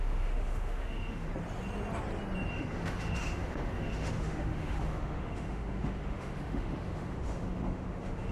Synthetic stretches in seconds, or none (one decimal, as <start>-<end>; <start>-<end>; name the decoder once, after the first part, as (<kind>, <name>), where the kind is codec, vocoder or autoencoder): 0.0-1.3 (autoencoder, DAC-VAE); 2.5-8.3